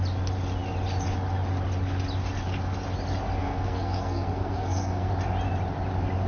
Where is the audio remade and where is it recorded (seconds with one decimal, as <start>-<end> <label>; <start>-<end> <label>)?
0.0-3.4 recorded; 3.4-5.1 remade; 5.1-6.3 recorded